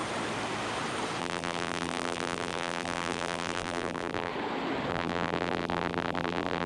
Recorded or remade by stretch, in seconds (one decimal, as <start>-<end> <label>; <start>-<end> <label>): 0.0-1.2 recorded; 1.2-4.3 remade; 4.3-4.9 recorded; 4.9-6.7 remade